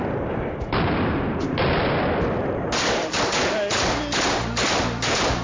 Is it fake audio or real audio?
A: fake